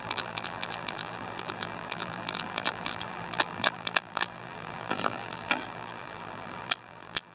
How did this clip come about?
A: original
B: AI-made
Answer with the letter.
B